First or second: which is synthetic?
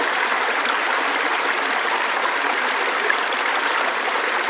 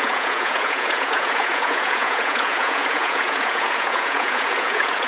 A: second